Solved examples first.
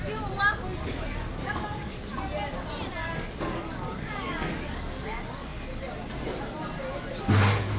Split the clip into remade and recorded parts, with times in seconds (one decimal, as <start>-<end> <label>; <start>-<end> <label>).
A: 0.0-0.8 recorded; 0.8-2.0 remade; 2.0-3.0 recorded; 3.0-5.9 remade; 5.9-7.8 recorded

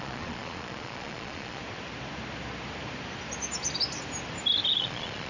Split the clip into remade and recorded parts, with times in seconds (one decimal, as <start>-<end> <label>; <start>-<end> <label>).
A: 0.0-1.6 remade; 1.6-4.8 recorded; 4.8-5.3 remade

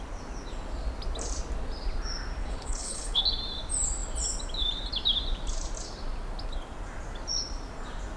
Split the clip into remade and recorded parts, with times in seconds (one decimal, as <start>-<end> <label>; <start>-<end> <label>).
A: 0.0-2.4 recorded; 2.4-3.2 remade; 3.2-8.2 recorded